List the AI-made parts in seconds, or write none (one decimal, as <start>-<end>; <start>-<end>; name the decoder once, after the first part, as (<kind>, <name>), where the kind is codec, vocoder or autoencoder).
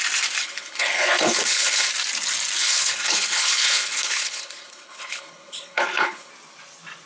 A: 0.4-1.9 (codec, HILCodec); 2.6-6.3